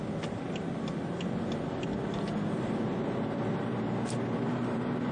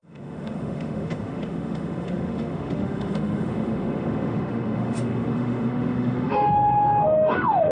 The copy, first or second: second